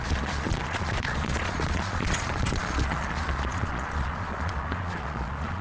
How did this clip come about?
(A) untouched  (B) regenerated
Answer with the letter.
B